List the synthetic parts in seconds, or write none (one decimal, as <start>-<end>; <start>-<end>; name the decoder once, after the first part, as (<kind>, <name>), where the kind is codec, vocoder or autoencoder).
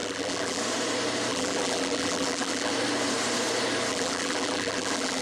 0.0-0.6 (vocoder, BigVGAN v2); 1.3-2.7; 3.9-5.2